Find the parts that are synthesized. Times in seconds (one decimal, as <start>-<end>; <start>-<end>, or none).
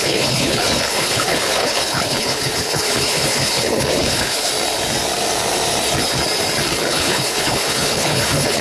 0.0-4.5; 6.9-8.6